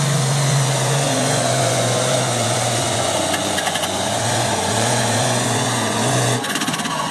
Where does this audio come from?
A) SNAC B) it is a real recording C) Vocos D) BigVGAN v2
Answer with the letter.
C